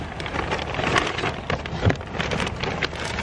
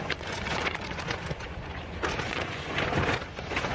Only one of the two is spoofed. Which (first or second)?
second